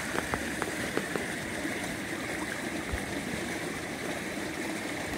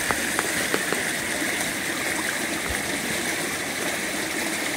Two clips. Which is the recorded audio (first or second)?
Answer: second